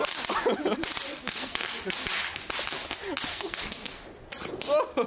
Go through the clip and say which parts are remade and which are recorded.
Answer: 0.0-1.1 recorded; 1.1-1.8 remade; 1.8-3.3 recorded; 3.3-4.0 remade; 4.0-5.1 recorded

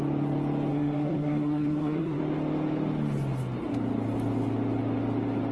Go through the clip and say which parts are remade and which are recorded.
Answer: 0.0-0.7 recorded; 0.7-2.2 remade; 2.2-5.5 recorded

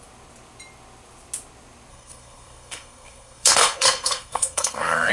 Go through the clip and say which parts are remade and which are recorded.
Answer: 0.0-1.9 recorded; 1.9-5.1 remade